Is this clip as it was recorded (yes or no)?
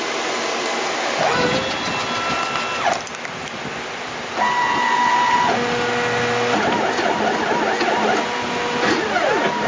yes